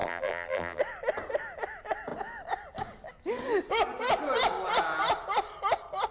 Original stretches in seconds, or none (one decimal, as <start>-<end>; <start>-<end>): 0.8-6.1